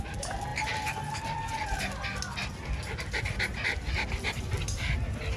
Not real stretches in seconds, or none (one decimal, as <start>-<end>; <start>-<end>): 0.5-1.8